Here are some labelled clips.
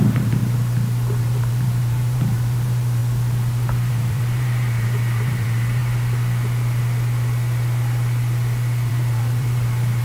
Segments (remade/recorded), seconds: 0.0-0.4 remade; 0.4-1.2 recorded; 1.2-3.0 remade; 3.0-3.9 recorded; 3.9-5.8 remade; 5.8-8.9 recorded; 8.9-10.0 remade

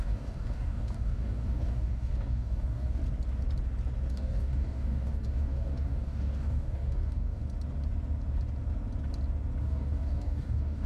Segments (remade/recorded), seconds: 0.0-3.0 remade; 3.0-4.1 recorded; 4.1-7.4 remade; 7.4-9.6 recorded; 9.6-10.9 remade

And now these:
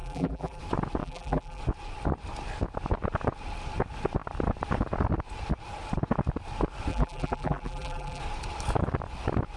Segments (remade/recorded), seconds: 0.0-0.6 remade; 0.6-1.0 recorded; 1.0-1.6 remade; 1.6-6.9 recorded; 6.9-8.2 remade; 8.2-9.6 recorded

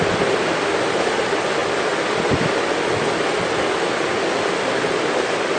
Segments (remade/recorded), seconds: 0.0-5.6 recorded

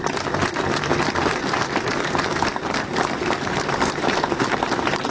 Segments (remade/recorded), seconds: 0.0-1.4 recorded; 1.4-4.5 remade; 4.5-5.1 recorded